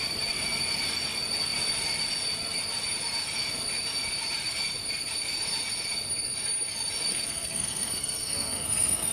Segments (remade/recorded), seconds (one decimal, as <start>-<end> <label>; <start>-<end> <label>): 0.0-7.1 recorded; 7.1-9.1 remade